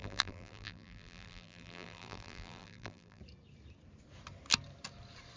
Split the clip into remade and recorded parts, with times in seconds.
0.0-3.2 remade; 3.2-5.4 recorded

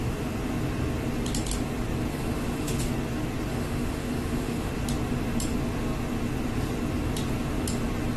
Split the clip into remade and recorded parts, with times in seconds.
0.0-2.1 recorded; 2.1-2.9 remade; 2.9-3.5 recorded; 3.5-4.7 remade; 4.7-8.2 recorded

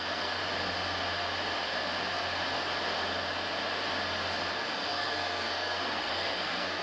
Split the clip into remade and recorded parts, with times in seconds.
0.0-0.4 remade; 0.4-4.5 recorded; 4.5-6.8 remade

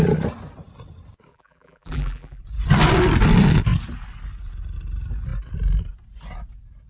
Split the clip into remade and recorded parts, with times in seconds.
0.0-1.3 recorded; 1.3-2.4 remade; 2.4-6.9 recorded

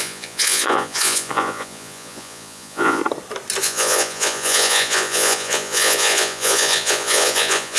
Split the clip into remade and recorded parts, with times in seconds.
0.0-3.0 remade; 3.0-3.6 recorded; 3.6-7.8 remade

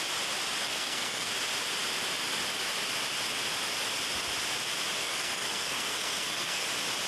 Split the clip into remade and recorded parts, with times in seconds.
0.0-0.6 recorded; 0.6-1.3 remade; 1.3-5.0 recorded; 5.0-6.6 remade; 6.6-7.1 recorded